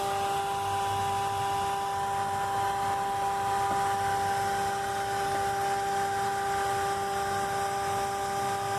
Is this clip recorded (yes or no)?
yes